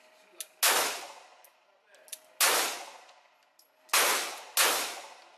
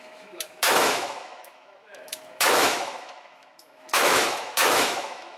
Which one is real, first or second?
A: first